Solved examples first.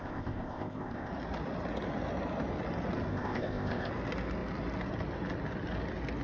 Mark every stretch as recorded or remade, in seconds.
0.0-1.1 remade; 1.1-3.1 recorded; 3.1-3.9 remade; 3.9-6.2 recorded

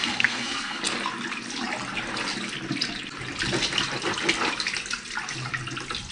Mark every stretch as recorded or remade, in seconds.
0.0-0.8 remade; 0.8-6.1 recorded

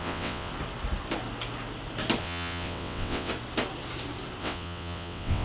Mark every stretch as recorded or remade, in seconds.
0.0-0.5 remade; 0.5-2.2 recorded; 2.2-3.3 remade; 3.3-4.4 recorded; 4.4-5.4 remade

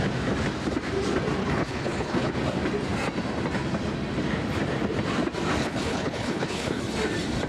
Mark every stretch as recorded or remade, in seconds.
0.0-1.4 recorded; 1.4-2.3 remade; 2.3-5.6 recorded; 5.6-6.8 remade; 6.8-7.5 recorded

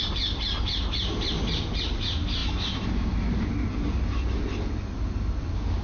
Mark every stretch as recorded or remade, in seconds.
0.0-5.8 recorded

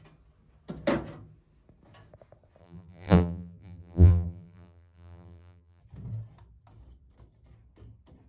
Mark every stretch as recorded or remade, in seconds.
0.0-2.6 recorded; 2.6-5.8 remade; 5.8-8.3 recorded